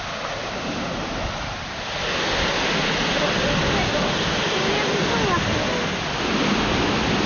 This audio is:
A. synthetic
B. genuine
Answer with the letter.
B